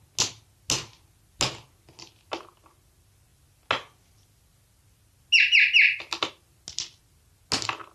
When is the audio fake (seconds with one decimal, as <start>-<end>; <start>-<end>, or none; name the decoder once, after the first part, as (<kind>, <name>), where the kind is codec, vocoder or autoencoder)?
none